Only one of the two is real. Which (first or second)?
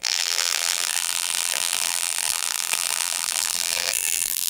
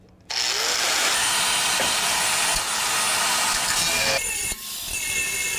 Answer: second